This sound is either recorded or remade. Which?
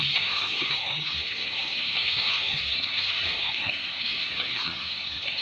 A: remade